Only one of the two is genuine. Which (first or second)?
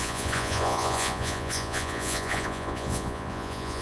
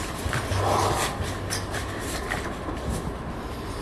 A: second